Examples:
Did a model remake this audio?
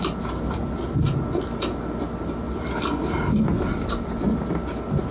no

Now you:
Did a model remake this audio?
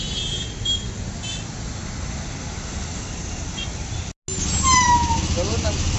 no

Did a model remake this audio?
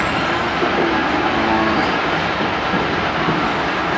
no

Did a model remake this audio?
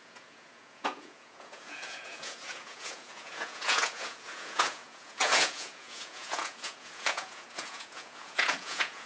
yes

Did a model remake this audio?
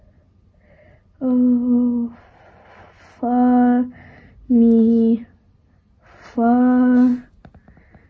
no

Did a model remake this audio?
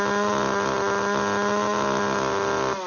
no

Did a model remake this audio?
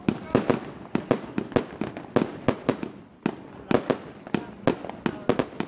no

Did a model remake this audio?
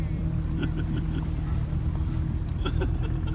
yes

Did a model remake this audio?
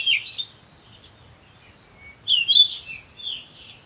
no